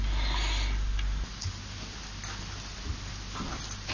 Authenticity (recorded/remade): recorded